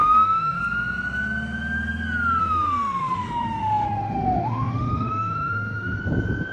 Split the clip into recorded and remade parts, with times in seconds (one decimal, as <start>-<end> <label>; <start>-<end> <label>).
0.0-0.6 remade; 0.6-2.4 recorded; 2.4-6.0 remade; 6.0-6.5 recorded